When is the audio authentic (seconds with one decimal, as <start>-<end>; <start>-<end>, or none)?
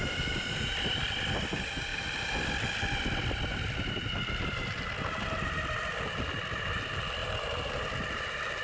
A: 0.0-8.6